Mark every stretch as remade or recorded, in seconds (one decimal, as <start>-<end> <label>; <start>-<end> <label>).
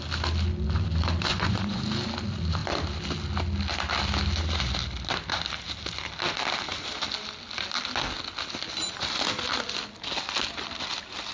0.0-1.3 recorded; 1.3-1.8 remade; 1.8-11.3 recorded